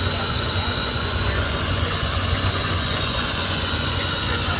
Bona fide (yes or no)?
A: no